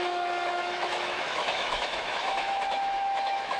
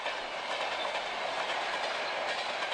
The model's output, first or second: first